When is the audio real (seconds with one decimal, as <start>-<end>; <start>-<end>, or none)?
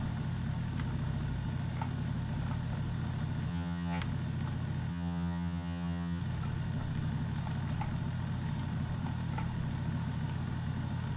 0.0-3.5; 4.0-4.9; 6.2-11.2